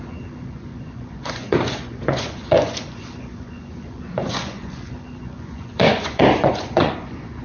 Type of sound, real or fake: fake